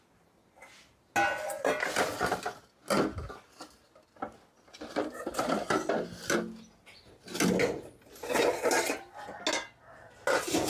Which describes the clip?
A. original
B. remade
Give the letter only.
A